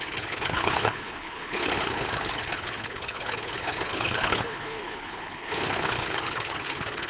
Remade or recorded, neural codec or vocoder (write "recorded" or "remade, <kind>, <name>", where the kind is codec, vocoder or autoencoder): remade, codec, HILCodec